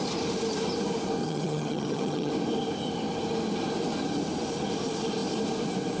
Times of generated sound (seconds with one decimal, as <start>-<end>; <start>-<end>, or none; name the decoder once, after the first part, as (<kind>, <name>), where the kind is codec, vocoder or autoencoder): 1.2-2.3 (vocoder, HiFi-GAN)